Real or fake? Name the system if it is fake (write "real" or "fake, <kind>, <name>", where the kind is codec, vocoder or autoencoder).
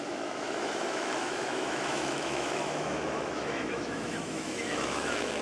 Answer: fake, autoencoder, DAC-VAE